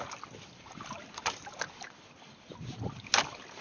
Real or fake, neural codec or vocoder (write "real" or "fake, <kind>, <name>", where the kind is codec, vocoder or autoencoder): real